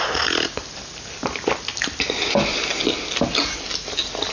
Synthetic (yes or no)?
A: no